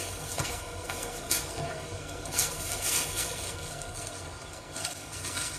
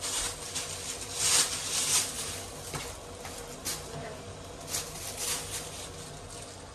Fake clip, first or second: first